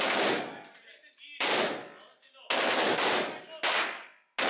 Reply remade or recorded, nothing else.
recorded